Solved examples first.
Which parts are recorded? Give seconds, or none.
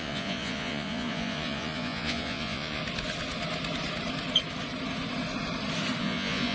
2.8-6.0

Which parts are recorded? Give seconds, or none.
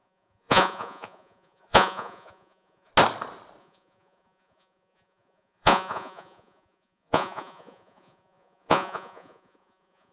2.9-3.6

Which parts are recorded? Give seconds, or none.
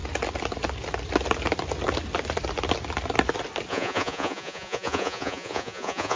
0.0-3.7